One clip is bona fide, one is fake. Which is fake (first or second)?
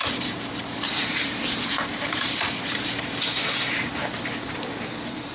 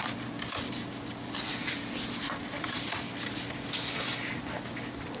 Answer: first